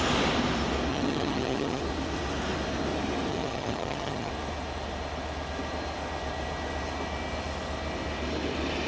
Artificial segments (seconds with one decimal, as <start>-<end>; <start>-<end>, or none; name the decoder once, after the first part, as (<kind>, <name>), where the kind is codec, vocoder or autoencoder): 0.9-1.8 (vocoder, HiFi-GAN); 3.3-4.3